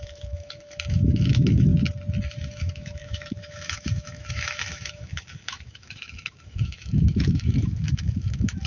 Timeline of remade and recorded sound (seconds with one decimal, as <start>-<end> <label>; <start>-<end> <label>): 0.0-1.7 remade; 1.7-2.5 recorded; 2.5-8.7 remade